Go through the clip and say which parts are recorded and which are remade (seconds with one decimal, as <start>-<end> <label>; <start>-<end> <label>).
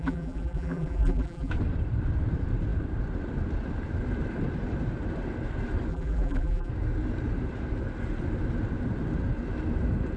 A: 0.0-1.5 remade; 1.5-5.9 recorded; 5.9-6.7 remade; 6.7-10.2 recorded